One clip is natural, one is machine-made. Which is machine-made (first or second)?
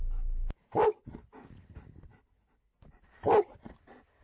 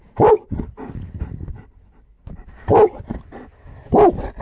second